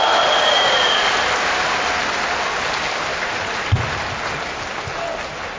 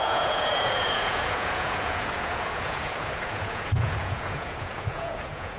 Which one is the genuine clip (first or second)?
first